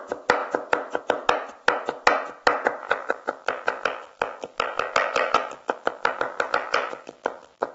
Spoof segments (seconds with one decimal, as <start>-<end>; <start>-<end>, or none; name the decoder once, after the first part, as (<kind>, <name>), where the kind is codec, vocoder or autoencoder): 2.8-7.7 (vocoder, BigVGAN v2)